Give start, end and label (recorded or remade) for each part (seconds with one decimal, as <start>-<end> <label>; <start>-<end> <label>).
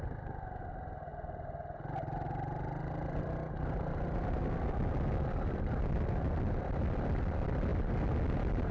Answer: 0.0-8.7 recorded